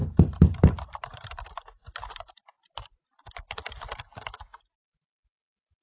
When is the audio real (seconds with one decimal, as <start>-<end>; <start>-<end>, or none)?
3.3-5.8